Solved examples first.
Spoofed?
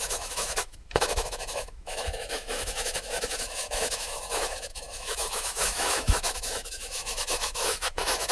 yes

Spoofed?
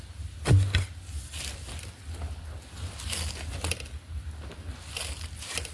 no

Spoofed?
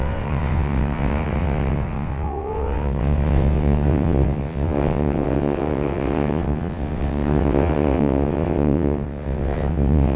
yes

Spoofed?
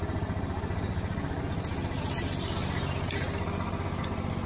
no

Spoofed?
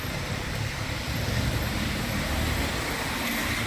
no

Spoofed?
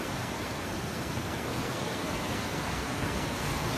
yes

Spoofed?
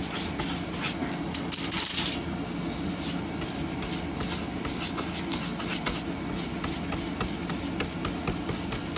no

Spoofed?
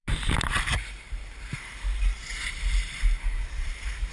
yes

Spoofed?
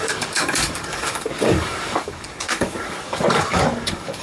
yes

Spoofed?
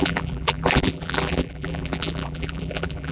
yes